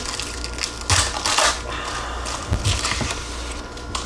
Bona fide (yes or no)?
yes